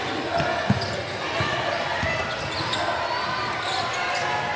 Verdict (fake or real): real